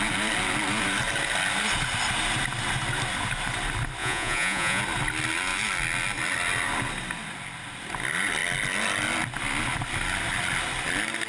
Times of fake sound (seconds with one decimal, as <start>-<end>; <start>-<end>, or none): 4.0-4.8